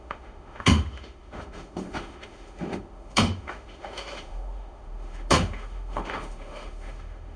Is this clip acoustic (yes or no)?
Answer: no